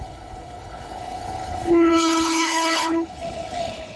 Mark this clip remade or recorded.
remade